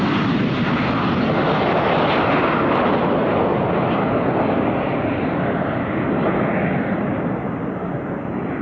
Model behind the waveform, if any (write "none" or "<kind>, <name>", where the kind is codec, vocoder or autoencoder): none